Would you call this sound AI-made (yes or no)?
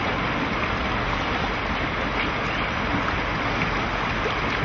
no